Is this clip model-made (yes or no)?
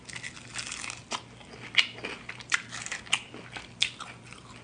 no